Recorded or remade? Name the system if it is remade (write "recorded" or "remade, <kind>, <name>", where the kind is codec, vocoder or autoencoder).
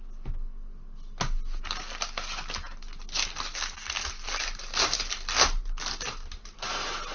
recorded